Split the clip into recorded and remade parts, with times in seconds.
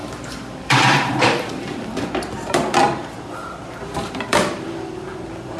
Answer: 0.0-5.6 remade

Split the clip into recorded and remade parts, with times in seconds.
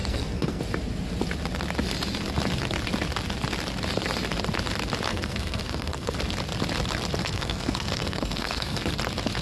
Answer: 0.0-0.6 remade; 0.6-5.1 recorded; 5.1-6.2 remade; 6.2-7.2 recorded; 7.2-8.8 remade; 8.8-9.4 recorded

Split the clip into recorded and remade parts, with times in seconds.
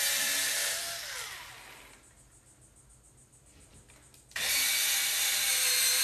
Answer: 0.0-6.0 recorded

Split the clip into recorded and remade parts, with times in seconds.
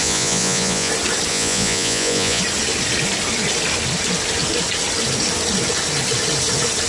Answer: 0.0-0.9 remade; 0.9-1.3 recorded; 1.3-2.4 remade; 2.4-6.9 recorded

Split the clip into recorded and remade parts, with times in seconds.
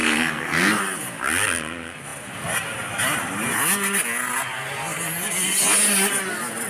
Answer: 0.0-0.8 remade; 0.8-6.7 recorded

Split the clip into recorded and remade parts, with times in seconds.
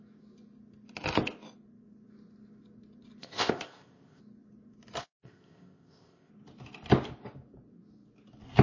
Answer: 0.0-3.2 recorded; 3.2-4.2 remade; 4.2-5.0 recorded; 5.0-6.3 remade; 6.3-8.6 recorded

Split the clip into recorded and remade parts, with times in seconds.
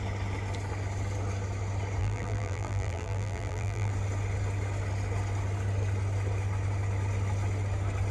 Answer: 0.0-2.0 recorded; 2.0-3.9 remade; 3.9-8.1 recorded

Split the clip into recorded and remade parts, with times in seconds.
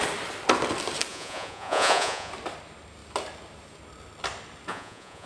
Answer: 0.0-1.1 recorded; 1.1-2.3 remade; 2.3-4.7 recorded; 4.7-5.3 remade